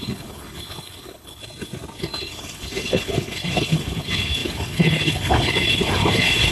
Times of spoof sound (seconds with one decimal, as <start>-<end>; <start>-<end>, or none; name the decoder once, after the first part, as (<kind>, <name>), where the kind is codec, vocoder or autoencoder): 0.0-1.4 (codec, HILCodec); 2.2-6.5